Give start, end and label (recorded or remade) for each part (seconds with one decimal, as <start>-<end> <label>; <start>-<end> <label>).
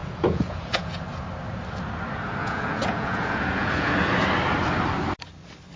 0.0-1.0 remade; 1.0-2.4 recorded; 2.4-3.9 remade; 3.9-5.8 recorded